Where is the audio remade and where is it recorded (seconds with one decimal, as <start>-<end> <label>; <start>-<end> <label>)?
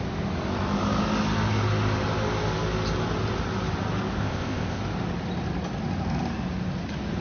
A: 0.0-4.2 recorded; 4.2-4.8 remade; 4.8-7.2 recorded